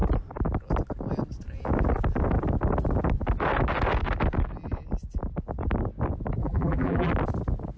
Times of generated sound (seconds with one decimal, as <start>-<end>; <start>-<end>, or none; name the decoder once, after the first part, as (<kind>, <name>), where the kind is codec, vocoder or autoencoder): 6.4-7.1 (vocoder, BigVGAN v2)